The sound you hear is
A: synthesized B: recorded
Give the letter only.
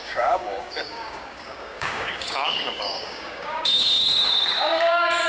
A